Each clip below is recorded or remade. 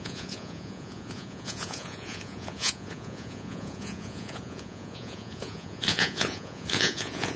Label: remade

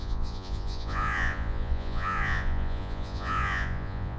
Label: remade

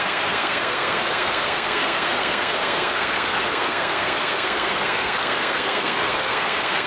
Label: remade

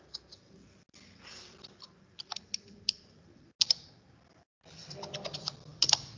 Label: recorded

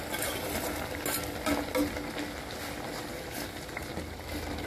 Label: recorded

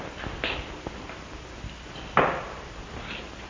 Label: recorded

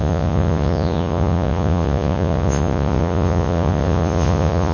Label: remade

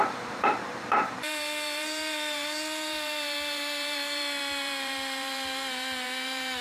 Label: remade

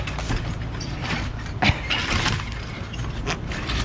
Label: recorded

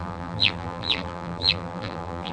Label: remade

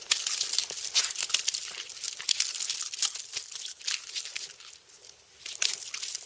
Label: recorded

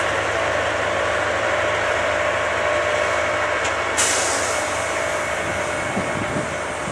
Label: recorded